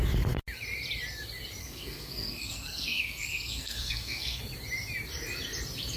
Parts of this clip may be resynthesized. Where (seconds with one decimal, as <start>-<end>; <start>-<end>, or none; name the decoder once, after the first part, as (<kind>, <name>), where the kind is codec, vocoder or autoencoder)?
1.6-4.4 (codec, SNAC)